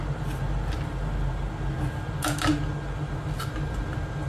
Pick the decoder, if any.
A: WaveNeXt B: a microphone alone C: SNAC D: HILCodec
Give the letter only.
B